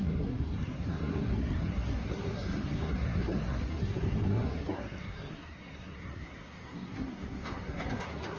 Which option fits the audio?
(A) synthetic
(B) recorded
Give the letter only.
A